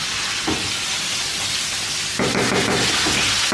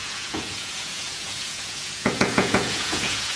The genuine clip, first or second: first